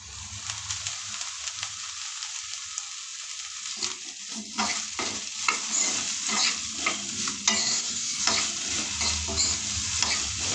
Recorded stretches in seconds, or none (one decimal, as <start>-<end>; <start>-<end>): 0.0-7.6; 8.2-10.5